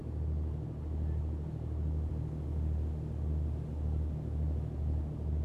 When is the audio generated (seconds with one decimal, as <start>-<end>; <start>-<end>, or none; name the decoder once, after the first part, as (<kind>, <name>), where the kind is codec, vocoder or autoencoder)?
none